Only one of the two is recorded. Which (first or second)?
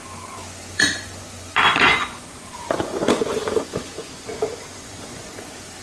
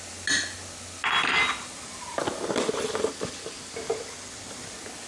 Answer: second